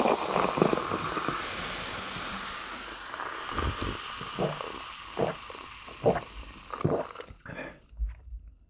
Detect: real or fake real